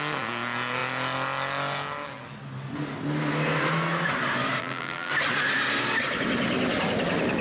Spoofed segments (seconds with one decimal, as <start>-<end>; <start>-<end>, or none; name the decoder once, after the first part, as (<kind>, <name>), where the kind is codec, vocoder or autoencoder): 4.6-5.1 (vocoder, BigVGAN v2)